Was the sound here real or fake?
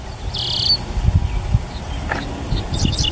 real